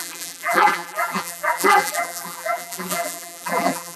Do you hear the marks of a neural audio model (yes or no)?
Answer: yes